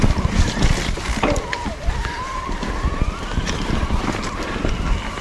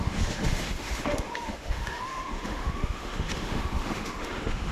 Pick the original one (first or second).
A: first